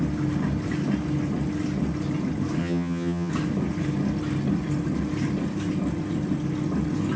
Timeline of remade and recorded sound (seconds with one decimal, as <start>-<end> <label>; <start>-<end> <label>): 0.0-2.6 recorded; 2.6-3.3 remade; 3.3-7.2 recorded